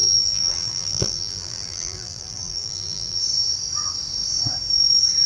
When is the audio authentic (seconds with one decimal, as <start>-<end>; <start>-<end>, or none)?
3.2-5.3